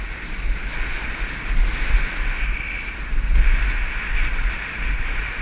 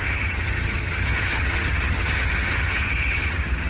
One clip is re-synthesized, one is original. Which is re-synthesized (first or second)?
second